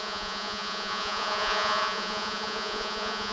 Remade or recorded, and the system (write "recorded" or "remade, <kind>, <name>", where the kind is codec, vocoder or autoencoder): remade, vocoder, Vocos